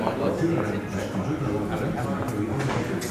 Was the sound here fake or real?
real